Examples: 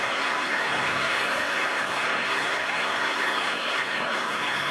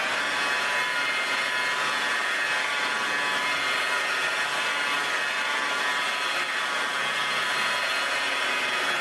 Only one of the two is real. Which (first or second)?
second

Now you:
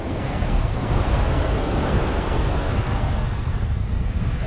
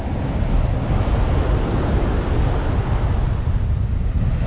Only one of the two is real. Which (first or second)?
second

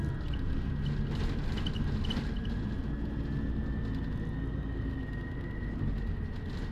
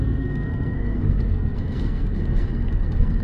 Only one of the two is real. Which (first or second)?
first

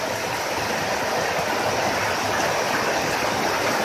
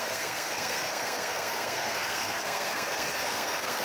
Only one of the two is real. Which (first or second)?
first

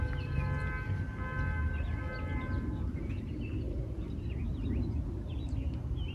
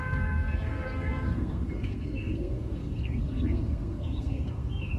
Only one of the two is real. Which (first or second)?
first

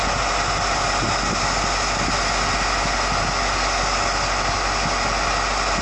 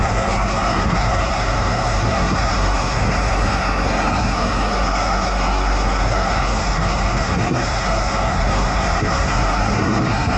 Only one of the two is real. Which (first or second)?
first